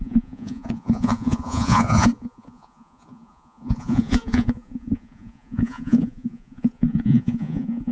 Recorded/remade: remade